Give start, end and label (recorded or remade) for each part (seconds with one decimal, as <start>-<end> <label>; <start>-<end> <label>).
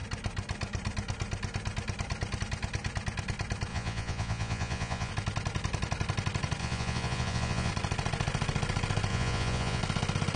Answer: 0.0-3.7 recorded; 3.7-5.1 remade; 5.1-6.6 recorded; 6.6-7.7 remade; 7.7-9.1 recorded; 9.1-9.8 remade; 9.8-10.4 recorded